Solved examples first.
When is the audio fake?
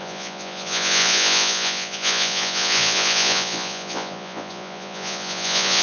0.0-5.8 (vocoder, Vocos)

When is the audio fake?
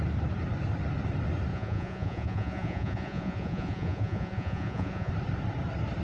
1.5-5.1 (vocoder, Vocos)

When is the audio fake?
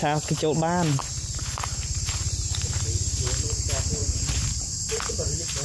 none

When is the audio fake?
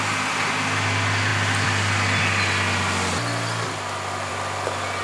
none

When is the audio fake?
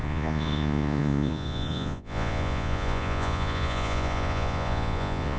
0.0-5.4 (vocoder, Vocos)